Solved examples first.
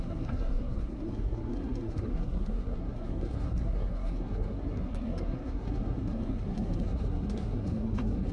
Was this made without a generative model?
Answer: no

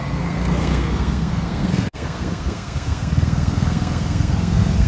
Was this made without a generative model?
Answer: no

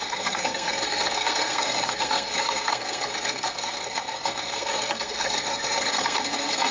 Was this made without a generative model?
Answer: no